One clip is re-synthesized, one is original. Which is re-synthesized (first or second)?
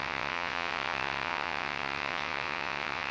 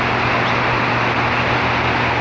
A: first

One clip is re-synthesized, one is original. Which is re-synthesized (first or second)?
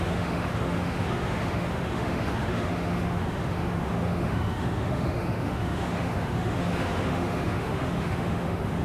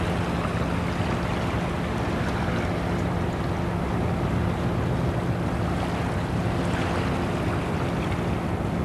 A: first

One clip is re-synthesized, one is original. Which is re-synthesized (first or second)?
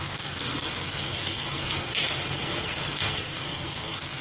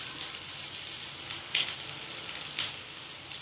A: first